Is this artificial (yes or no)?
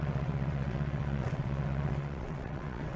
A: yes